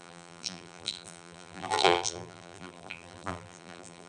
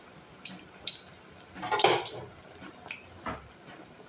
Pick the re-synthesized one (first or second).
first